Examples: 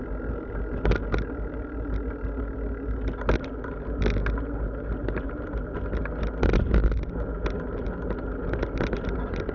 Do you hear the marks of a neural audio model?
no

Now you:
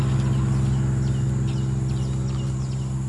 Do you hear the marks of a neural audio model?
no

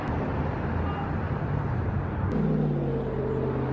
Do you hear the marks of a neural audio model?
no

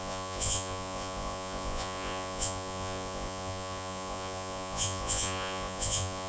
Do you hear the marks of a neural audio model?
yes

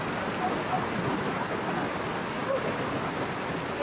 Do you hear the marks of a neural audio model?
no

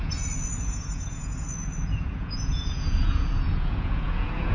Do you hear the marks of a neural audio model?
yes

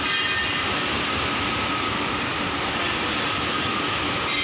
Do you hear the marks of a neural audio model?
no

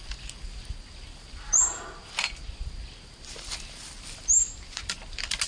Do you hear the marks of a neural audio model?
no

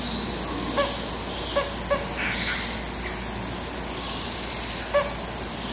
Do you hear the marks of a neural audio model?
no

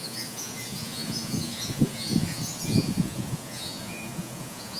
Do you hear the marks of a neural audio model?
yes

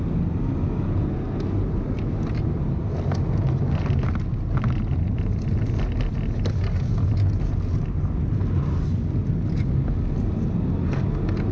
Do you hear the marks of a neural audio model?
no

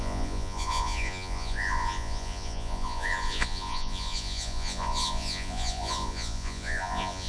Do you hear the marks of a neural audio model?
yes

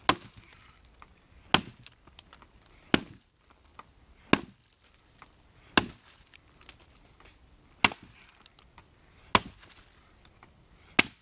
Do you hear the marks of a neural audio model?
no